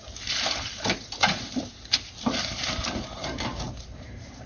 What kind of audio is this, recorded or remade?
remade